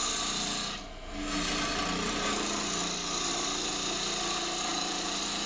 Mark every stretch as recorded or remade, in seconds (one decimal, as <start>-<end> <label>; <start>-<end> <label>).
0.0-3.3 recorded; 3.3-3.7 remade; 3.7-4.6 recorded; 4.6-5.5 remade

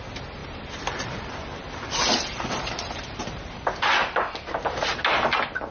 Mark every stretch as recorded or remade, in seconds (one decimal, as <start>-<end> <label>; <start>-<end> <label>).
0.0-0.4 recorded; 0.4-3.8 remade; 3.8-5.7 recorded

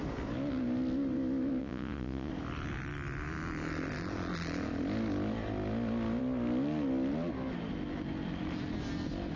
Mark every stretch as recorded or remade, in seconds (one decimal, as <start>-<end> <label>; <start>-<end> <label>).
0.0-1.6 recorded; 1.6-2.3 remade; 2.3-9.4 recorded